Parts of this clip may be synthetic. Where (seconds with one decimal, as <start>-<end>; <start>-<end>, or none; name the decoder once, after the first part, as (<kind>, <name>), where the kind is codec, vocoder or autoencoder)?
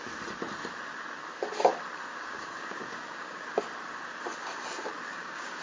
2.1-3.6 (codec, DAC); 5.1-5.6